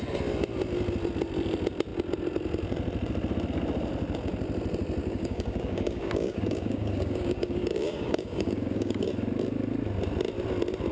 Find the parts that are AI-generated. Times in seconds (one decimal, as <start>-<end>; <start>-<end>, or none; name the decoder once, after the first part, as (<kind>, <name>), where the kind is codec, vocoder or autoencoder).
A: 5.0-9.1 (codec, DAC)